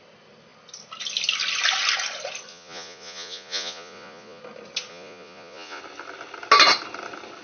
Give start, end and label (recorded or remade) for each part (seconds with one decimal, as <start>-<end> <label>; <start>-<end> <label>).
0.0-2.5 recorded; 2.5-4.4 remade; 4.4-4.9 recorded; 4.9-5.8 remade; 5.8-7.4 recorded